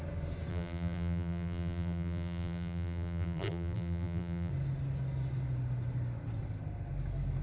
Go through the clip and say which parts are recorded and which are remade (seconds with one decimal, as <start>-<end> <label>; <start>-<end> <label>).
0.0-0.5 recorded; 0.5-4.5 remade; 4.5-7.4 recorded